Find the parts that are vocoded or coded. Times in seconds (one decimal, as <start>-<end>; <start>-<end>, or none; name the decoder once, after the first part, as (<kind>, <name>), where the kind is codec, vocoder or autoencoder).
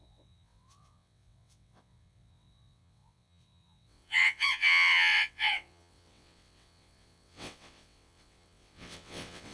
0.0-9.5 (vocoder, WaveNeXt)